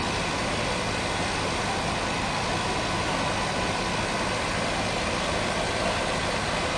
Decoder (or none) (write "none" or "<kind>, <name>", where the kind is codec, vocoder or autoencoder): none